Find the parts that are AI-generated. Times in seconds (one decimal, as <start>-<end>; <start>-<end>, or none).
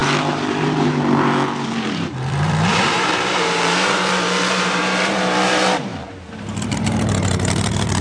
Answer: 0.0-5.9; 6.4-8.0